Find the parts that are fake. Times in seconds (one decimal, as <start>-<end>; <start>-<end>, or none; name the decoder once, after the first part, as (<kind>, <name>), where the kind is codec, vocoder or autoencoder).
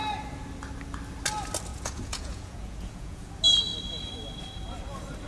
1.7-3.3 (vocoder, Vocos)